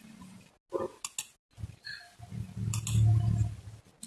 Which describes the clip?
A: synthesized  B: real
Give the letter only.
B